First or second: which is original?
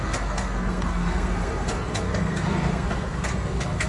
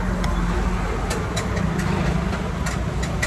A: second